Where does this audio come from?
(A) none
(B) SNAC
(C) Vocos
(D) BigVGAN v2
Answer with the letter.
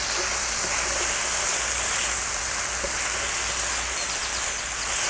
A